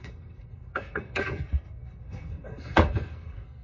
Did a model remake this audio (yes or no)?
yes